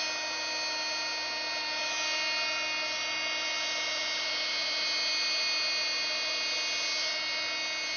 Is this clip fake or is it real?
real